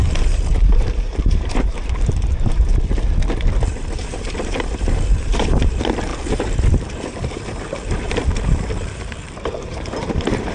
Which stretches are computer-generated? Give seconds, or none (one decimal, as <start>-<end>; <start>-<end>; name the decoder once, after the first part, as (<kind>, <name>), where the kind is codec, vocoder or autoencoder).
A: 0.0-2.7 (vocoder, BigVGAN v2); 3.7-10.5